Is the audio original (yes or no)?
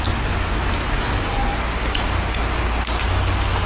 yes